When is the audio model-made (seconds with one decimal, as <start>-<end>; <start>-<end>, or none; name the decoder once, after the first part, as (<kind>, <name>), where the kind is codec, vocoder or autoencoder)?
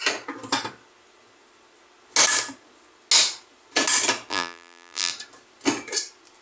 4.3-5.1 (vocoder, BigVGAN v2)